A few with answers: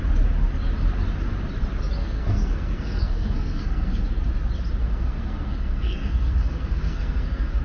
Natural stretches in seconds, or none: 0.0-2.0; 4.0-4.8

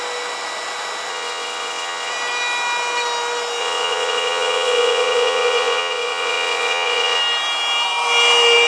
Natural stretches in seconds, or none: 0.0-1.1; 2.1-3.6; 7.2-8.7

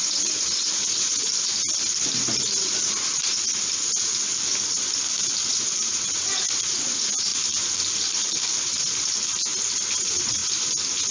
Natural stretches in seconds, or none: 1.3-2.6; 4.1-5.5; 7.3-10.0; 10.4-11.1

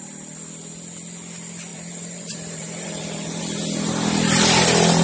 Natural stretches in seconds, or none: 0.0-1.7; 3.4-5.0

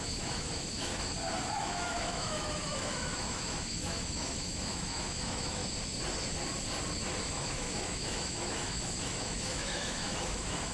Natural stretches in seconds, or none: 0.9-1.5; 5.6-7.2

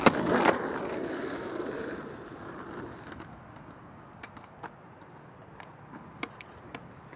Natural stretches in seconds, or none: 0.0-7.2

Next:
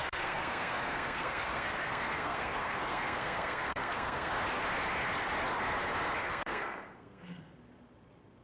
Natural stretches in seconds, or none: 4.3-6.2; 7.4-8.4